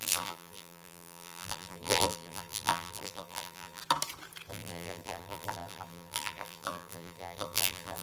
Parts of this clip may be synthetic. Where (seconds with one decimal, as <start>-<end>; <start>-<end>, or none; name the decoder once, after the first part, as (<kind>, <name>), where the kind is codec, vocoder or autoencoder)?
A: 0.0-3.8 (vocoder, BigVGAN v2); 4.5-8.0